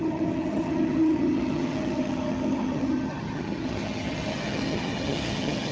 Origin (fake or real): fake